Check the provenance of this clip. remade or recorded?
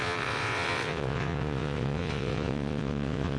remade